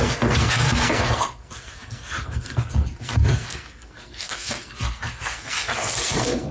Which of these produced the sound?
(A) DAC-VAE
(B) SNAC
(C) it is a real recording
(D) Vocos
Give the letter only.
B